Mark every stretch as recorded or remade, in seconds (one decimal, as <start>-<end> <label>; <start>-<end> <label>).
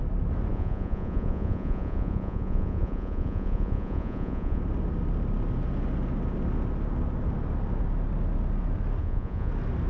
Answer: 0.0-0.5 recorded; 0.5-4.6 remade; 4.6-9.0 recorded; 9.0-9.5 remade; 9.5-9.9 recorded